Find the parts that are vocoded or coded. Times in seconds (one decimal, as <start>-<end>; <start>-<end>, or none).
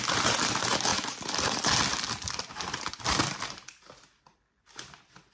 none